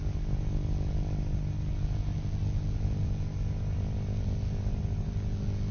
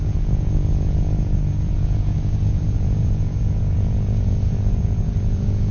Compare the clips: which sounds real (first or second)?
first